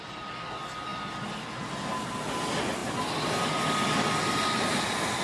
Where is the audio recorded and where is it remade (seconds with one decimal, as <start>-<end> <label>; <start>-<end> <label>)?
0.0-5.2 recorded

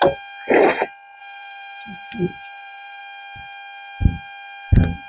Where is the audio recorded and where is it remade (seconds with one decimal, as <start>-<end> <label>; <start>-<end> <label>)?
0.0-1.2 recorded; 1.2-3.0 remade; 3.0-5.1 recorded

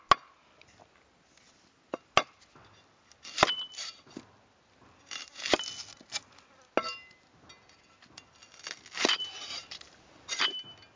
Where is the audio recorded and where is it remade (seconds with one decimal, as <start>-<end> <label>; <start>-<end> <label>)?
0.0-9.5 recorded; 9.5-10.4 remade; 10.4-11.0 recorded

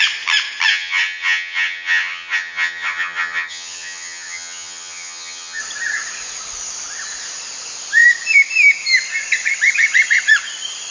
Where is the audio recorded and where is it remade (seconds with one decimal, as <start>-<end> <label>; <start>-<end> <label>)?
0.0-0.7 recorded; 0.7-5.6 remade; 5.6-10.9 recorded

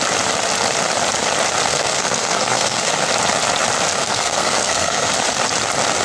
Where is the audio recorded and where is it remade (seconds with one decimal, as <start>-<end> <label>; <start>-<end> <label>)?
0.0-1.7 recorded; 1.7-2.9 remade; 2.9-4.0 recorded; 4.0-5.1 remade; 5.1-6.0 recorded

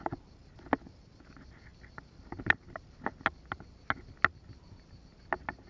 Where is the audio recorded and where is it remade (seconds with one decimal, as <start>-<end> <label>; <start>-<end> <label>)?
0.0-5.7 recorded